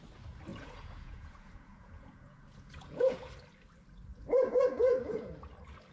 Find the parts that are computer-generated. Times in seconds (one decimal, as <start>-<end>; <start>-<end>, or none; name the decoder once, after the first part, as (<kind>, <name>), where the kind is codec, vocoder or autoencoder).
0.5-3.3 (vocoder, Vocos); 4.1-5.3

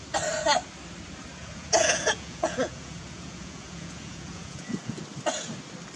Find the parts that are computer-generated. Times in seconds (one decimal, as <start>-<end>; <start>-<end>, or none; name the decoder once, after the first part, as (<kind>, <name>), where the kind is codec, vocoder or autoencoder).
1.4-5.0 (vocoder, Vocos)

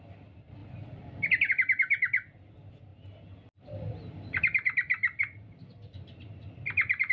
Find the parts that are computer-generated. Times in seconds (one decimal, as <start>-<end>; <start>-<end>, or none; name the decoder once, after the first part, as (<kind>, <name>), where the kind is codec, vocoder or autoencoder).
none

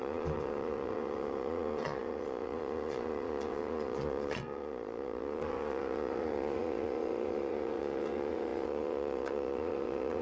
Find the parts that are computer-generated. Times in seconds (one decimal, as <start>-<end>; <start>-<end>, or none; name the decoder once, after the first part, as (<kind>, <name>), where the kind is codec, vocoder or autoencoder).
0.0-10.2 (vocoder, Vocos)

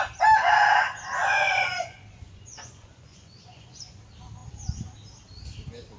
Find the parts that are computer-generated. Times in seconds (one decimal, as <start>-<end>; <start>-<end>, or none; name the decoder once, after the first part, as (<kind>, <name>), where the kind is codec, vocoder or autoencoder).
1.2-4.0 (vocoder, Vocos)

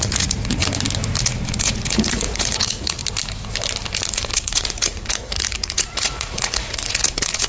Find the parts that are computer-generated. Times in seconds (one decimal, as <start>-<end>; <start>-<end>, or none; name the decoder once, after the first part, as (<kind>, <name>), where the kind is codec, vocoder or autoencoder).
0.0-0.6 (vocoder, Vocos); 1.2-3.0; 4.1-7.5

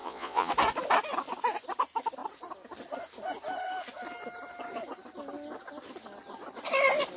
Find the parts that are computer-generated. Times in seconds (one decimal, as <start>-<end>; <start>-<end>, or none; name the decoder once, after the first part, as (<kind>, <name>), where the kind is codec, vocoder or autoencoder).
0.0-0.5 (vocoder, Vocos)